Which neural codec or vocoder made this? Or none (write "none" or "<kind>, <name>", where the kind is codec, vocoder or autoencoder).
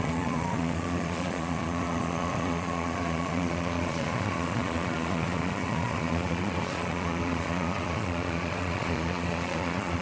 vocoder, Vocos